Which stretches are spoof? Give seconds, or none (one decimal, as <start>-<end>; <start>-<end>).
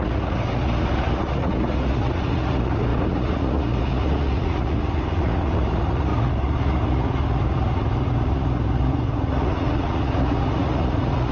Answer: 0.0-11.3